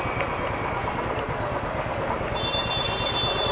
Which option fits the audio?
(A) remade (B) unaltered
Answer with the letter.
B